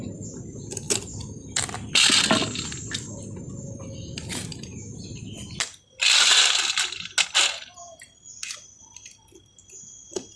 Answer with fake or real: real